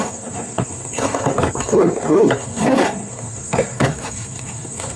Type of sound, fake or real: fake